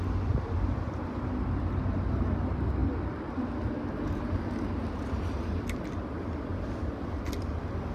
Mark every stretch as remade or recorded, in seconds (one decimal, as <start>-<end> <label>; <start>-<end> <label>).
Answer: 0.0-7.9 recorded